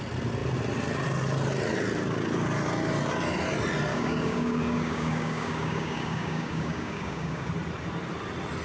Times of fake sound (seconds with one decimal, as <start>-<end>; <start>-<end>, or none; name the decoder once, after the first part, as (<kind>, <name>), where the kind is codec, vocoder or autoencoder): 3.9-7.5 (codec, DAC)